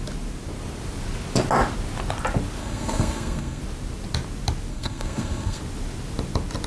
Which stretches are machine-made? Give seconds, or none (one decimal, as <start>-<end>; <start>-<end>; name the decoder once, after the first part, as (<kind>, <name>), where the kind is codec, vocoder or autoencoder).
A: 2.6-3.6 (codec, SNAC); 4.7-5.6